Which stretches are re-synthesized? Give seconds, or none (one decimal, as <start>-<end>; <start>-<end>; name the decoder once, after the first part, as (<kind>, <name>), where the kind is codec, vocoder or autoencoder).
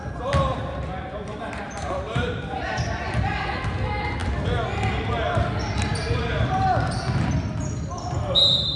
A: 0.5-2.9 (vocoder, BigVGAN v2)